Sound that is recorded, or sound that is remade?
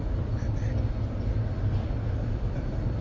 recorded